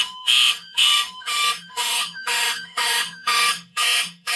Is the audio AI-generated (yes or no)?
yes